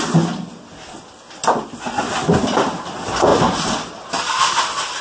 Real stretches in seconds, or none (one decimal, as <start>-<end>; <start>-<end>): 0.0-5.0